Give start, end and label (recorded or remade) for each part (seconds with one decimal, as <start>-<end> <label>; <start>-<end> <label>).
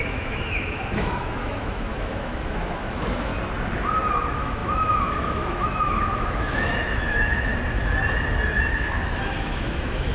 0.0-3.3 remade; 3.3-4.1 recorded; 4.1-7.5 remade; 7.5-8.7 recorded; 8.7-10.1 remade